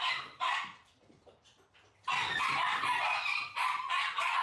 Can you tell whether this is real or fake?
real